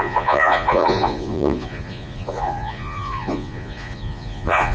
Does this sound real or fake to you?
fake